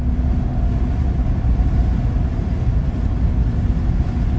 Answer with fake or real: real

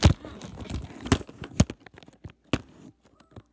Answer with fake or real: real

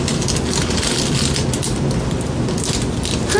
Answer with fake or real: real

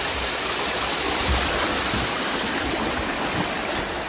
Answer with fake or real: real